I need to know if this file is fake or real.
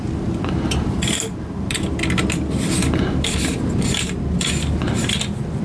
real